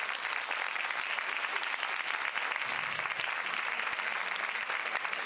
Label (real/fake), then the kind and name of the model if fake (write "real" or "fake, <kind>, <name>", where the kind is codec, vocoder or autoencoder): real